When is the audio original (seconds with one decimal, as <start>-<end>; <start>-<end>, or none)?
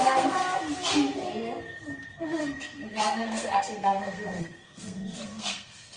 0.4-2.2